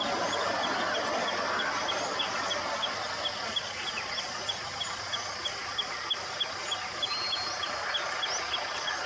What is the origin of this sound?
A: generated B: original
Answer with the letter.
B